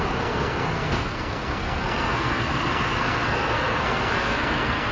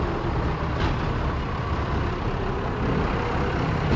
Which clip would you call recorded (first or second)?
second